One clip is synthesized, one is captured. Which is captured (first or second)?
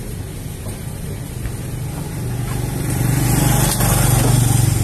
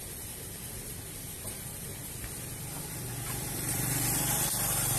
first